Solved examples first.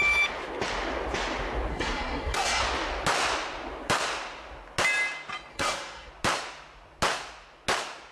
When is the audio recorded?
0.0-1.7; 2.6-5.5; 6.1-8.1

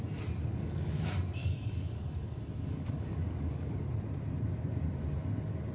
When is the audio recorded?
0.0-0.5; 1.0-1.4; 3.8-5.7

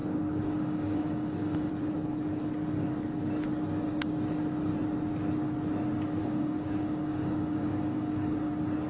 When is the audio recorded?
1.7-6.2; 8.5-8.9

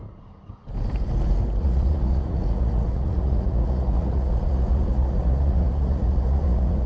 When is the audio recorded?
0.0-1.6

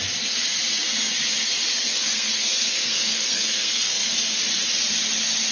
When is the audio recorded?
0.0-1.7; 4.1-5.5

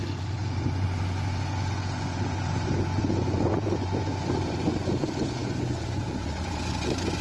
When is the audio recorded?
none

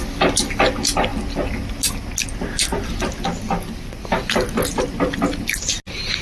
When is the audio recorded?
0.0-6.2

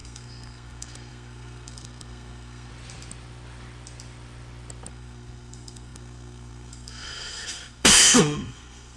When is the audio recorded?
2.7-4.9